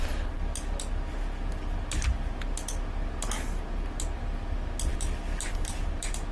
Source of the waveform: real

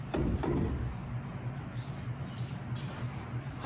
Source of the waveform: real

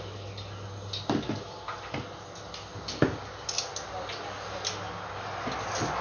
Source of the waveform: real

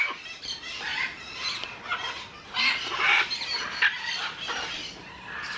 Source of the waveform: real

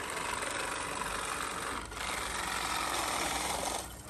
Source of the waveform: real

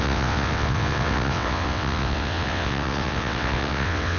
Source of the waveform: fake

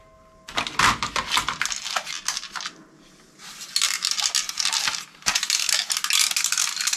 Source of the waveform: real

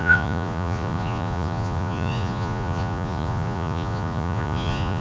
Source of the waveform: fake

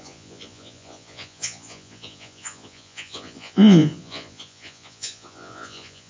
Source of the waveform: fake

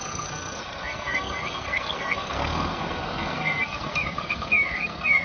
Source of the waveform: fake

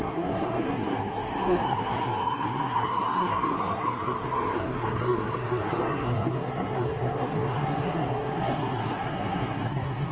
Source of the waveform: fake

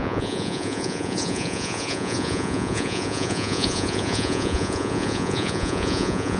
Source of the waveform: fake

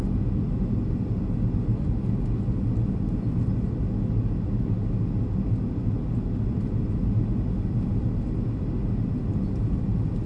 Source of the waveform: real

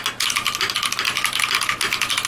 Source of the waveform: real